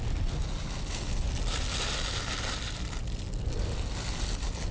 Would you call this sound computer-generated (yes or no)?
no